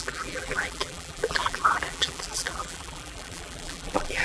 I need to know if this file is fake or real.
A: fake